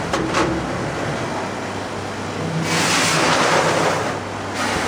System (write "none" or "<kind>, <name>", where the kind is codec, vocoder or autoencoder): none